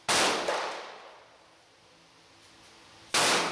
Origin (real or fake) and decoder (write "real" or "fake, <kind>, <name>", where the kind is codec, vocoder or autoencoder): real